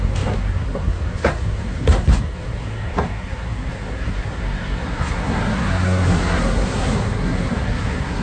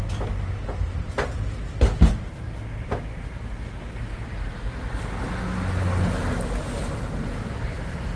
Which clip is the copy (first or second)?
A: first